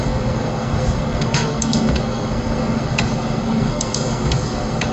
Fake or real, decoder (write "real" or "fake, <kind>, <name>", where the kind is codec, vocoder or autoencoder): fake, codec, SNAC